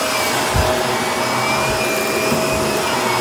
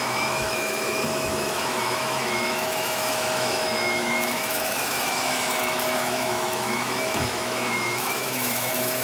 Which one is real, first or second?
first